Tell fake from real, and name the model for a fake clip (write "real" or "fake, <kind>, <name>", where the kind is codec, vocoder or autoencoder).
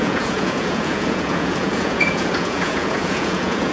fake, vocoder, Vocos